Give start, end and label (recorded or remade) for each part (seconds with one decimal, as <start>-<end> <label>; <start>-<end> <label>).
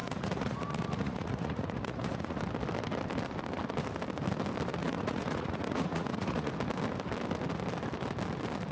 0.0-2.4 remade; 2.4-4.8 recorded; 4.8-6.5 remade; 6.5-8.7 recorded